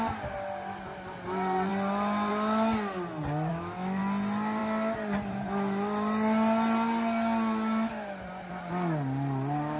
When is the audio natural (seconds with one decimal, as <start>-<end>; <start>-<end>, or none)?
0.0-3.5; 4.0-9.8